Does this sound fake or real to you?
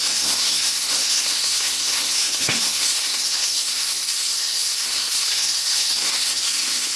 fake